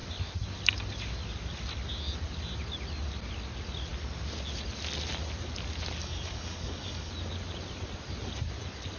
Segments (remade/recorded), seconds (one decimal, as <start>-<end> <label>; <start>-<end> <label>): 0.0-6.0 recorded; 6.0-7.1 remade; 7.1-9.0 recorded